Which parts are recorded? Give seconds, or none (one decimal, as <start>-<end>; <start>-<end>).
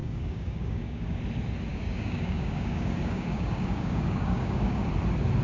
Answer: 1.2-1.7; 4.9-5.4